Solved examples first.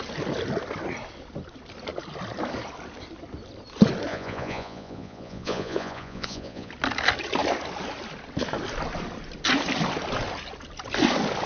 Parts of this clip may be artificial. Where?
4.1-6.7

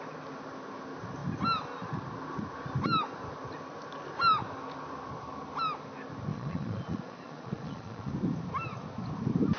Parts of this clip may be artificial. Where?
6.3-8.1